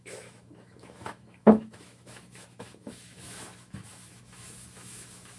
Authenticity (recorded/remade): remade